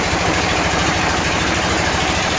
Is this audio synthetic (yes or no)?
yes